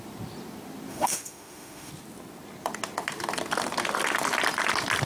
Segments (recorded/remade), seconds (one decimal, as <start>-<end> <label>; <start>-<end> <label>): 0.0-0.9 recorded; 0.9-1.9 remade; 1.9-5.1 recorded